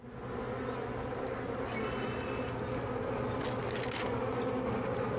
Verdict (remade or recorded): recorded